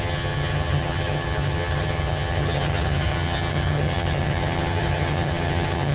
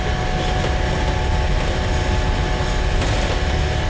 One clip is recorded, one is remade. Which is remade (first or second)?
first